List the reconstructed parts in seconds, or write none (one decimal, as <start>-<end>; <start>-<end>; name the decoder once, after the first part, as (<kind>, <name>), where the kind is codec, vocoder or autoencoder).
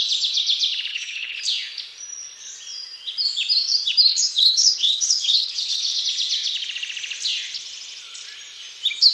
0.9-1.4 (codec, HILCodec); 4.1-6.0